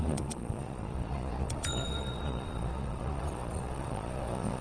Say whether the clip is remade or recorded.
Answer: remade